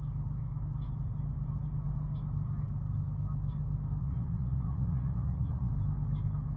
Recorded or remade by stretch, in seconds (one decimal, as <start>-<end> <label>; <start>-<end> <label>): 0.0-4.0 recorded; 4.0-5.7 remade; 5.7-6.6 recorded